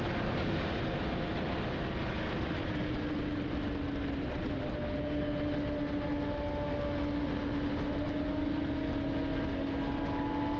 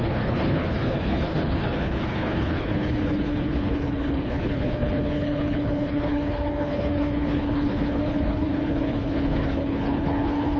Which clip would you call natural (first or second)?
first